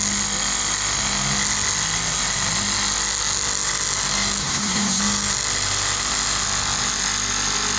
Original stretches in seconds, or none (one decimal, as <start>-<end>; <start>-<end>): 0.0-4.4; 5.0-7.8